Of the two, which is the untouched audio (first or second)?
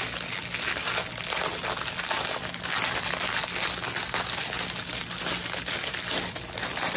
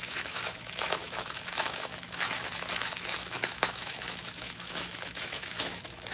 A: first